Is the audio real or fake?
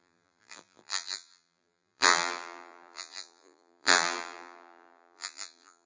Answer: fake